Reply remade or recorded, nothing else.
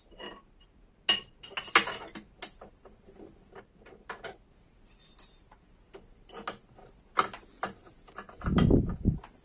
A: recorded